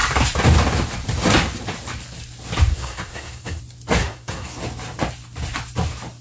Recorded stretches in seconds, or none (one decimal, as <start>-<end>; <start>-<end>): 0.0-2.7; 3.6-4.0; 4.6-6.2